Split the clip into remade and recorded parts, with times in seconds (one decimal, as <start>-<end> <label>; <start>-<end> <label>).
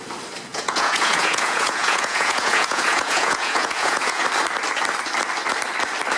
0.0-0.5 recorded; 0.5-4.2 remade; 4.2-6.2 recorded